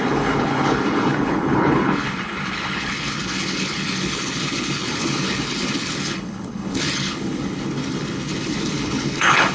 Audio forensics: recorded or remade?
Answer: remade